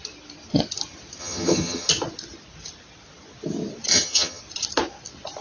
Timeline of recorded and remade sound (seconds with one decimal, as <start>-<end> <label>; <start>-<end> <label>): 0.0-1.2 recorded; 1.2-1.9 remade; 1.9-3.9 recorded; 3.9-4.4 remade; 4.4-5.4 recorded

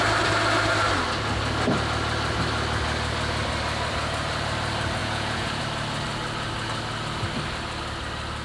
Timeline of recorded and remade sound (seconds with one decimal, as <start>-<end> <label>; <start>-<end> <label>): 0.0-5.0 recorded; 5.0-5.6 remade; 5.6-8.4 recorded

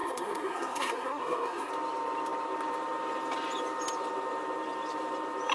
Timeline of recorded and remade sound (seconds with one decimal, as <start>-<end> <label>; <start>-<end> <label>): 0.0-1.7 remade; 1.7-5.5 recorded

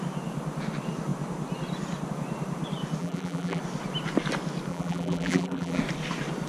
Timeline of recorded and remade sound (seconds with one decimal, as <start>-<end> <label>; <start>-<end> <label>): 0.0-3.0 recorded; 3.0-3.6 remade; 3.6-4.7 recorded; 4.7-5.8 remade; 5.8-6.5 recorded

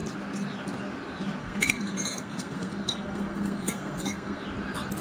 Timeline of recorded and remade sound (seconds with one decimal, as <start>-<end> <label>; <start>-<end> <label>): 0.0-1.4 recorded; 1.4-4.4 remade; 4.4-5.0 recorded

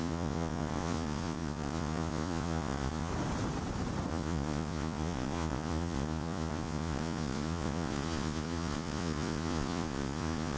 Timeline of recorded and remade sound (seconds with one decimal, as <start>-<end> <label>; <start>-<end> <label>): 0.0-3.1 remade; 3.1-4.1 recorded; 4.1-10.6 remade